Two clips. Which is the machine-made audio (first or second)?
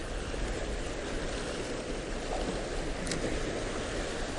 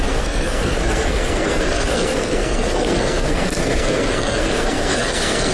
second